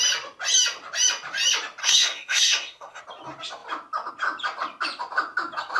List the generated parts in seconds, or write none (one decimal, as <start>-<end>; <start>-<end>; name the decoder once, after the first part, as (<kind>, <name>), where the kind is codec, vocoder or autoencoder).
1.8-3.0 (codec, SNAC)